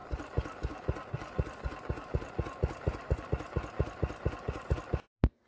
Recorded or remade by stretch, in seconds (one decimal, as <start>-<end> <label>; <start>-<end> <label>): 0.0-5.5 recorded

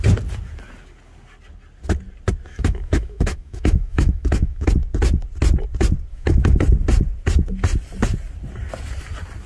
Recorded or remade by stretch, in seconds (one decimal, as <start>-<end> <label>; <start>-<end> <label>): 0.0-2.5 recorded; 2.5-4.7 remade; 4.7-6.1 recorded; 6.1-6.6 remade; 6.6-9.5 recorded

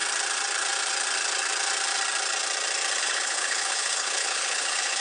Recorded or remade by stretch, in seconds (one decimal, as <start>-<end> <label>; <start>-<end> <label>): 0.0-3.0 recorded; 3.0-5.0 remade

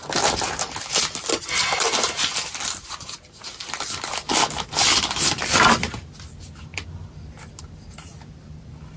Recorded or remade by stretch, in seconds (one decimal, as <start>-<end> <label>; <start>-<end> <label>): 0.0-9.0 recorded

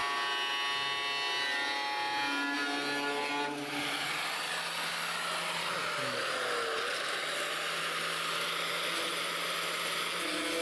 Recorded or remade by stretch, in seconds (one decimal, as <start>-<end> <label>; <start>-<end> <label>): 0.0-10.6 recorded

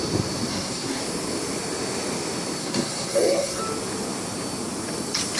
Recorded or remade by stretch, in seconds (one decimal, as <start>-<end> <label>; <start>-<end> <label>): 0.0-0.5 recorded; 0.5-1.0 remade; 1.0-2.6 recorded; 2.6-3.6 remade; 3.6-5.4 recorded

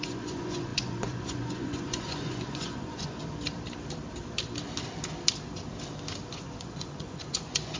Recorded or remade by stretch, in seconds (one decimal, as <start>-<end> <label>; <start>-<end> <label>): 0.0-3.2 remade; 3.2-6.3 recorded; 6.3-7.8 remade

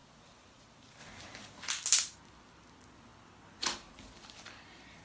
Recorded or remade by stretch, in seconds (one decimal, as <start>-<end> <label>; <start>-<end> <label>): 0.0-1.0 recorded; 1.0-1.7 remade; 1.7-5.0 recorded